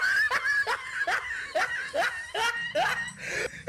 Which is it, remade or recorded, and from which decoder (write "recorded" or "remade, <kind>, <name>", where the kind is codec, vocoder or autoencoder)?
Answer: recorded